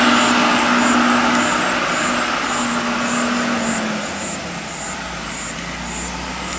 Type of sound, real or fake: real